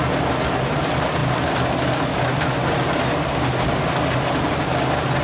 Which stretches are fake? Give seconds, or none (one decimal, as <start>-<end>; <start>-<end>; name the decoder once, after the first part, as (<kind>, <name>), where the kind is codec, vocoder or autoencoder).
none